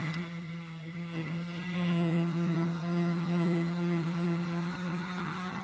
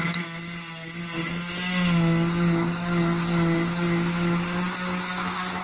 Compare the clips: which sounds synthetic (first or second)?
first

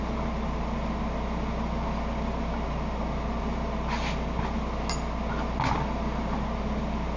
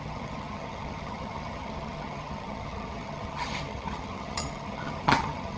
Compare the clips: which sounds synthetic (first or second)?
second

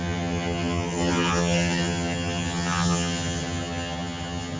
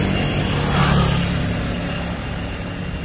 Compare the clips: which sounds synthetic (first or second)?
first